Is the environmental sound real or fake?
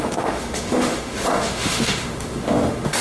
fake